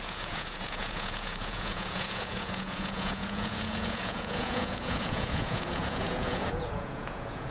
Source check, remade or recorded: remade